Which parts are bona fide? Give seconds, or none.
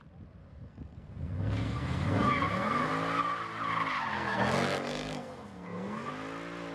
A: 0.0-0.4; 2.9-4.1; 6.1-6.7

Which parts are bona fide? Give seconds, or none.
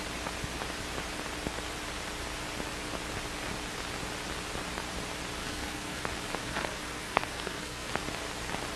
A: 0.0-5.4; 6.0-6.4; 7.9-8.8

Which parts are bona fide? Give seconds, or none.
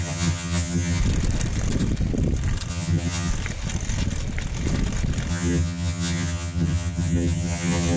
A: 1.0-2.7; 3.3-5.3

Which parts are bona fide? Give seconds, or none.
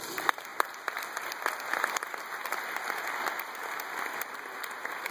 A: 0.0-5.1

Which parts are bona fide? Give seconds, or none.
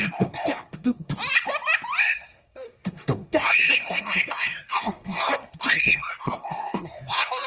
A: 1.2-2.0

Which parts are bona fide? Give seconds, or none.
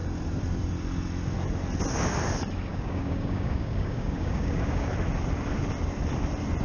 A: 0.0-2.7; 4.9-6.6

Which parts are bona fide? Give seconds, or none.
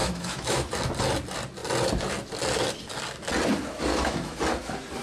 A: 0.7-3.9; 4.4-5.0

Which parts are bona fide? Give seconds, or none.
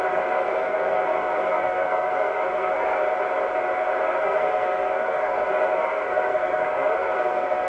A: 3.0-4.2